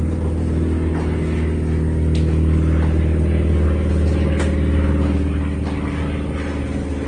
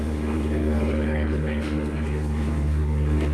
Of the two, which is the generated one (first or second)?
second